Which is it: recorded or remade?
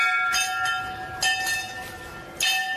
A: recorded